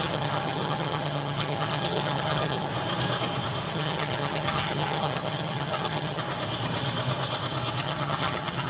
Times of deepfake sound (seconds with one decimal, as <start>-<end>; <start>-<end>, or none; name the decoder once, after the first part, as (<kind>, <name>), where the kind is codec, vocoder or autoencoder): 0.0-2.7 (vocoder, HiFi-GAN); 3.7-6.2; 7.8-8.7